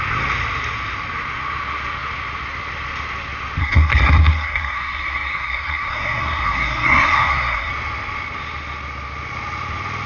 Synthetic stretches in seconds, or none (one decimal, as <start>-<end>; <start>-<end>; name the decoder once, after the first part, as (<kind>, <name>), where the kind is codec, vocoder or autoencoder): 3.6-7.7 (codec, SNAC)